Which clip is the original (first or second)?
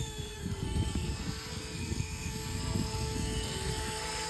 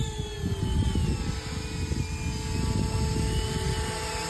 second